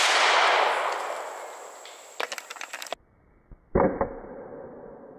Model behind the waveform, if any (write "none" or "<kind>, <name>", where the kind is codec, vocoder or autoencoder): none